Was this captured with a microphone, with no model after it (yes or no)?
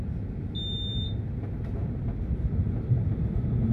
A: yes